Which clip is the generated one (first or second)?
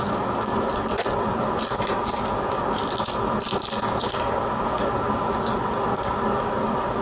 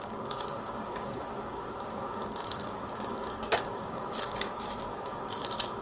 second